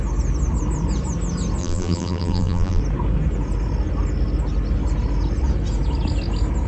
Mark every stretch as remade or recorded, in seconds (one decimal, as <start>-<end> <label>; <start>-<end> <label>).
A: 0.0-1.6 recorded; 1.6-2.8 remade; 2.8-6.7 recorded